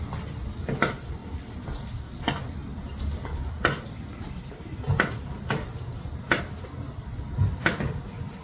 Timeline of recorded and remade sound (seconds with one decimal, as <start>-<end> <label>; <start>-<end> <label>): 0.0-8.4 recorded